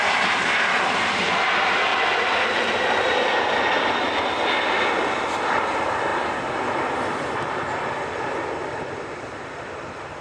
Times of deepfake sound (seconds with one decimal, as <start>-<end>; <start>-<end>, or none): 0.0-1.9; 2.5-6.1; 7.1-10.2